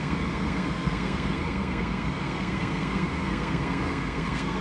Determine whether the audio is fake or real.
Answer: fake